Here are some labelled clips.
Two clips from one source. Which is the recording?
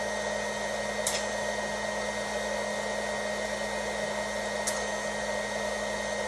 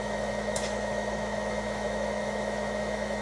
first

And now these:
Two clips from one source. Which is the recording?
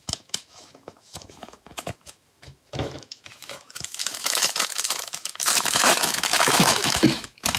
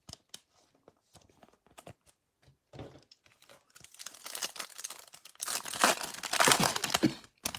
second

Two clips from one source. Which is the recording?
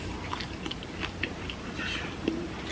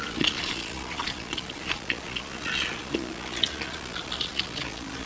first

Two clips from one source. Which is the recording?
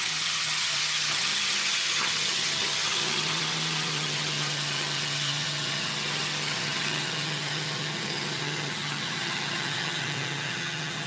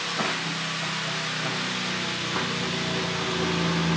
second